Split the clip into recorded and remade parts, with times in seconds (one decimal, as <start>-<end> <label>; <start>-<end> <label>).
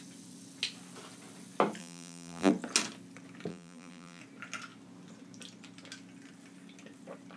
0.0-1.8 recorded; 1.8-2.5 remade; 2.5-3.5 recorded; 3.5-4.2 remade; 4.2-7.4 recorded